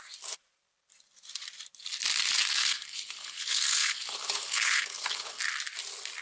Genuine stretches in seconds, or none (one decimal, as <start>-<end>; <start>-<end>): 0.0-2.6; 5.4-6.2